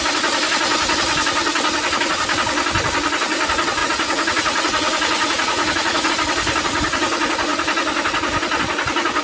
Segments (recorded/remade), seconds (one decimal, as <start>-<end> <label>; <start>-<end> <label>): 0.0-3.8 recorded; 3.8-6.1 remade; 6.1-9.2 recorded